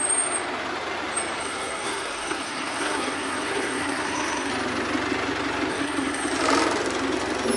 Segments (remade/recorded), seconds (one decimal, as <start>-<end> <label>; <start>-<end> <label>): 0.0-1.4 recorded; 1.4-4.5 remade; 4.5-5.7 recorded; 5.7-6.3 remade; 6.3-7.6 recorded